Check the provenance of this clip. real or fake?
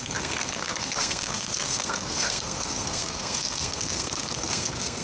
fake